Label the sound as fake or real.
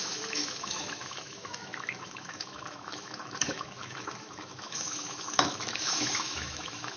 fake